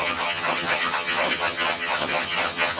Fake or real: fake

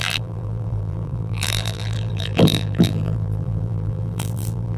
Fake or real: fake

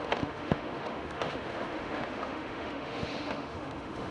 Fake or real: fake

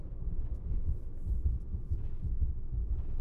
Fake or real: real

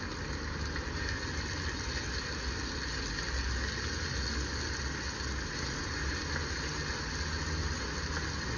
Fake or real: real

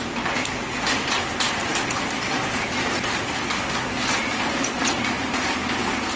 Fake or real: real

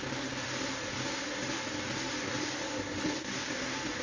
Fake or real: real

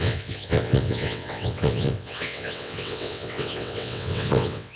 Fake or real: fake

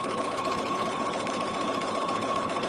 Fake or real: fake